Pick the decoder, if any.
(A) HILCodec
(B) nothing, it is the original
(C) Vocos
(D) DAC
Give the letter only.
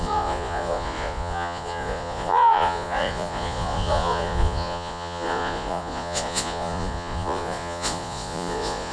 C